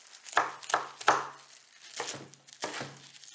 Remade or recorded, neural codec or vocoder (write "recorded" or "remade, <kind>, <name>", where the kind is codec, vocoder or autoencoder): recorded